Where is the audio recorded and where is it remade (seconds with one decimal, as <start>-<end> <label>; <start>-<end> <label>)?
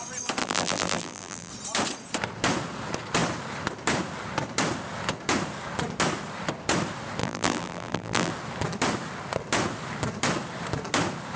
0.0-0.4 recorded; 0.4-1.5 remade; 1.5-7.2 recorded; 7.2-8.3 remade; 8.3-11.4 recorded